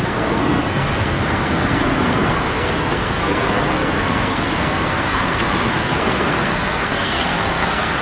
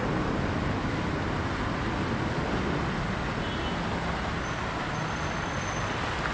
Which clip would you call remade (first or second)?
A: first